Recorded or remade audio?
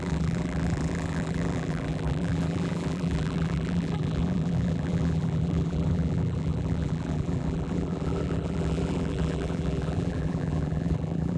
remade